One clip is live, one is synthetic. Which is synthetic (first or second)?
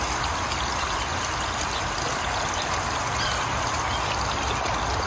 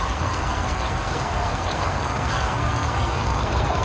second